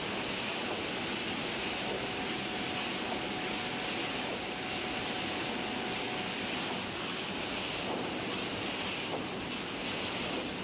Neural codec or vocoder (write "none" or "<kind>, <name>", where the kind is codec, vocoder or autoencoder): none